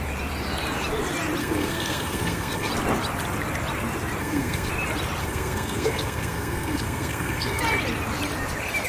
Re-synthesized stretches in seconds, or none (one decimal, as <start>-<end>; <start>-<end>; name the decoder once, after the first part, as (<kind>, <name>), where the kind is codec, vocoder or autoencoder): 1.4-2.7 (codec, SNAC); 4.2-4.7; 5.2-7.6